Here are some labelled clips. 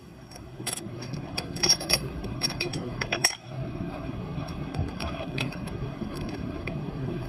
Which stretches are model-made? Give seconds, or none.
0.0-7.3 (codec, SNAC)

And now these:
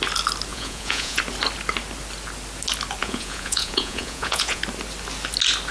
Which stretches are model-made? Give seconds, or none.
0.5-1.2 (vocoder, Vocos); 3.0-4.6